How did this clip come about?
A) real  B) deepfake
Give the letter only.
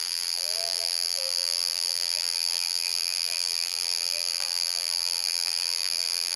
B